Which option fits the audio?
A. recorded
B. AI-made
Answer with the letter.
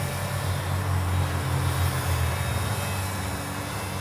A